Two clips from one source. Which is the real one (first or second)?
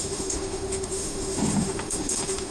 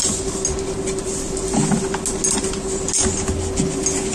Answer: second